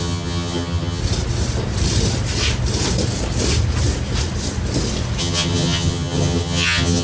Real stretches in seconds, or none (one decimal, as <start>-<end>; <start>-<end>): 1.0-5.2